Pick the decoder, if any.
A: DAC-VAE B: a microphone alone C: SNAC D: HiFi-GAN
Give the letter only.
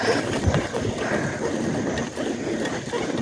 B